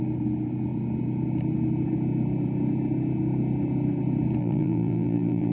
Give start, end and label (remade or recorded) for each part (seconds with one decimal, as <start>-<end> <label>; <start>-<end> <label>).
0.0-4.4 recorded; 4.4-5.5 remade